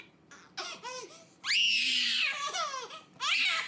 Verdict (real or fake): real